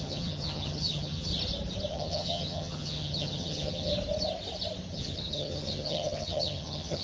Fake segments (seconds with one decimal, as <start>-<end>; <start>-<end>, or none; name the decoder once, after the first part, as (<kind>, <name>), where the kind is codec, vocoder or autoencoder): 0.0-1.3 (vocoder, HiFi-GAN); 1.9-3.9; 4.9-7.0